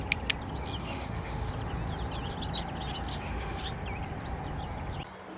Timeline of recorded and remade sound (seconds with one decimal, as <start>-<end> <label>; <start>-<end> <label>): 0.0-0.8 recorded; 0.8-1.5 remade; 1.5-3.1 recorded; 3.1-3.6 remade; 3.6-5.4 recorded